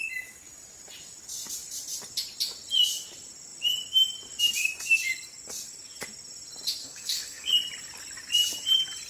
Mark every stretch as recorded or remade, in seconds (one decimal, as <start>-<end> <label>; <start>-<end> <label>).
0.0-6.8 recorded; 6.8-7.5 remade; 7.5-9.1 recorded